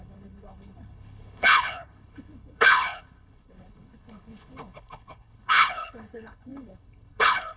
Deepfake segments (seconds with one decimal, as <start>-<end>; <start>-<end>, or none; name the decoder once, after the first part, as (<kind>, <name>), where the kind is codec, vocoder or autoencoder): 0.0-7.6 (codec, HILCodec)

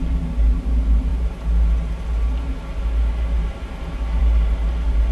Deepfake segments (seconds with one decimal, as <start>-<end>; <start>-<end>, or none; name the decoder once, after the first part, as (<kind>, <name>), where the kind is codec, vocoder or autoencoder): none

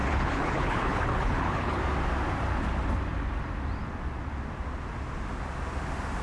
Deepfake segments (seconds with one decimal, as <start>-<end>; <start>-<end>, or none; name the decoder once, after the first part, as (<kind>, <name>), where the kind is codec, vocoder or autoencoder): 0.0-1.8 (codec, HILCodec)

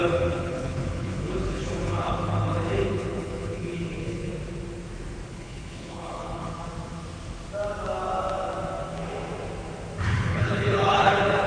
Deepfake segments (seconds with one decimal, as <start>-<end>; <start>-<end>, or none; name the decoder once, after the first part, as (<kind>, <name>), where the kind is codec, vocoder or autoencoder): 0.0-4.3 (codec, HILCodec); 5.3-6.6; 10.1-11.5

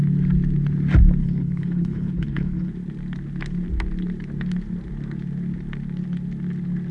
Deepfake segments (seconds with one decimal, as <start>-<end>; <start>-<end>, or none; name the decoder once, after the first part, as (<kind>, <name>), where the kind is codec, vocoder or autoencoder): 1.2-2.7 (codec, HILCodec)

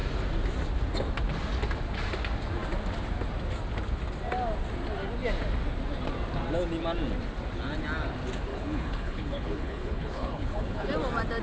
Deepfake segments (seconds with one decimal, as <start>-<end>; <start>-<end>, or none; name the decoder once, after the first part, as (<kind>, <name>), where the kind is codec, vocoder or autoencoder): 8.5-10.9 (codec, HILCodec)

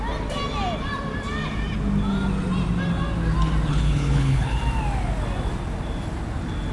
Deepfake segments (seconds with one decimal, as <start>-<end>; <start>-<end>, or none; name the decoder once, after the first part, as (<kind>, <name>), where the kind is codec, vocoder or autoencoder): 3.7-4.6 (codec, HILCodec)